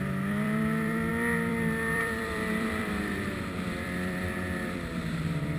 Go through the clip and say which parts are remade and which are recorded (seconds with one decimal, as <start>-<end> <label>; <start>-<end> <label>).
0.0-5.6 remade